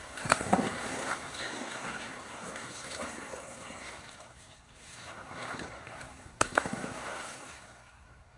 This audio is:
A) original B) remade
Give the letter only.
B